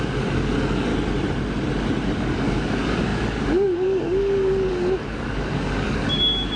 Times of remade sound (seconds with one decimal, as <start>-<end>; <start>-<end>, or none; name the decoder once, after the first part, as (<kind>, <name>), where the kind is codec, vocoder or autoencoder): 0.0-0.9 (codec, DAC); 2.2-6.6